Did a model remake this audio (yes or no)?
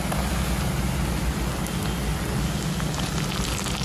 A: no